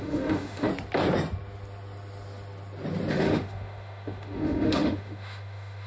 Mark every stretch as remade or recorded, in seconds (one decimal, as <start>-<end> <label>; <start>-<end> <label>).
0.0-0.7 remade; 0.7-3.1 recorded; 3.1-5.9 remade